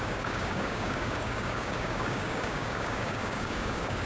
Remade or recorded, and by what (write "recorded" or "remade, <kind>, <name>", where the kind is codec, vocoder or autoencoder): remade, codec, DAC